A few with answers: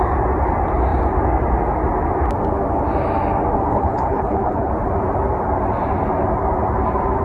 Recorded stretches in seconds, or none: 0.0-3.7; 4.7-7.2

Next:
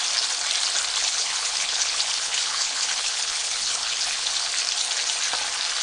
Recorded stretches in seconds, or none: 0.0-1.0; 4.5-5.8

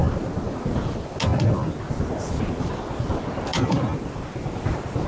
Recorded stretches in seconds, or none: 0.0-5.1

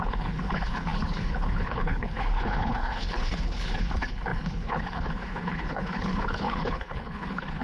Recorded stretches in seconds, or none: none